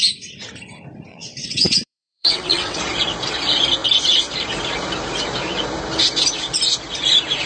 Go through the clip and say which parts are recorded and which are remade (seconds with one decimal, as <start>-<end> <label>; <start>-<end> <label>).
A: 0.0-1.1 recorded; 1.1-2.8 remade; 2.8-7.5 recorded